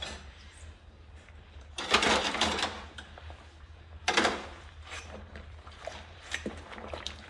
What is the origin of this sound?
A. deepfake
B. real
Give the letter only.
A